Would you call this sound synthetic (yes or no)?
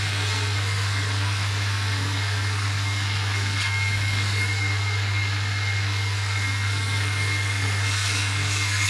yes